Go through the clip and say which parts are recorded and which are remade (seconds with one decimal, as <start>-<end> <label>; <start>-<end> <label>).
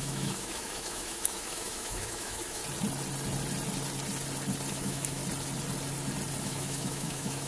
0.0-2.6 remade; 2.6-4.7 recorded; 4.7-5.2 remade; 5.2-6.4 recorded; 6.4-7.5 remade